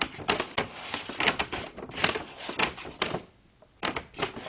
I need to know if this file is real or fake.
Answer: real